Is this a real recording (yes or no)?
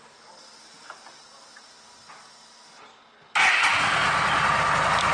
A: yes